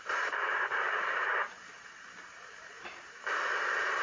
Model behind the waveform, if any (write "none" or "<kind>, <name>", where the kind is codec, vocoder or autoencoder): vocoder, BigVGAN v2